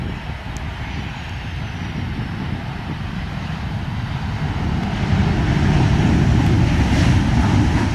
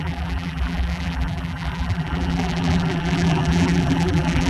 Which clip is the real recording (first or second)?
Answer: first